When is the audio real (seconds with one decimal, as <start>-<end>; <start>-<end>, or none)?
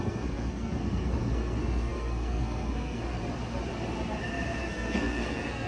3.2-4.6